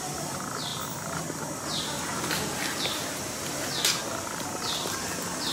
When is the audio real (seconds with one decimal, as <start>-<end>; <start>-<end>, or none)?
0.0-5.5